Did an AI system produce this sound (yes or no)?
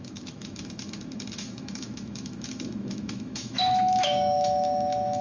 yes